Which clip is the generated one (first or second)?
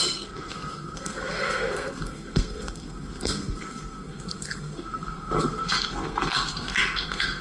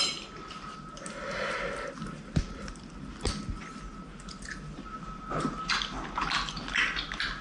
first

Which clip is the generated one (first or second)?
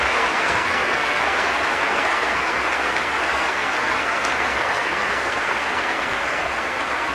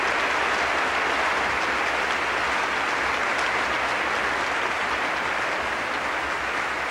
first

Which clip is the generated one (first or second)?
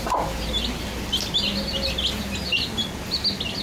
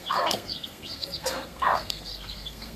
second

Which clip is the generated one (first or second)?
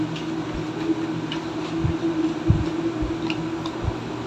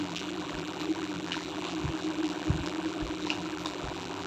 second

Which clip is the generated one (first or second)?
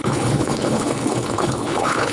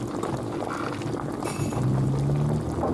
first